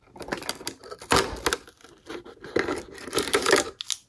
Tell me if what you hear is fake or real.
real